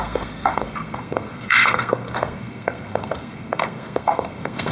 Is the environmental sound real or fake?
fake